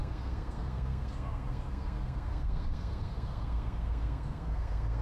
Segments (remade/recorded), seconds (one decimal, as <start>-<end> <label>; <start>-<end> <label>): 0.0-5.0 remade